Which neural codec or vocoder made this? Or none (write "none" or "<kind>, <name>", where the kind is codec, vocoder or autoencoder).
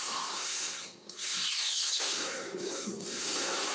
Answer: codec, SNAC